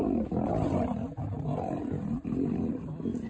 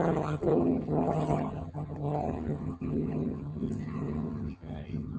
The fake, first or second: second